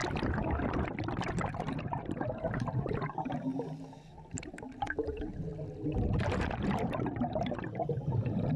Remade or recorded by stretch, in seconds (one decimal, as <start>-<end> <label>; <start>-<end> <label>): 0.0-1.2 recorded; 1.2-3.5 remade; 3.5-4.3 recorded; 4.3-5.5 remade; 5.5-6.2 recorded; 6.2-8.6 remade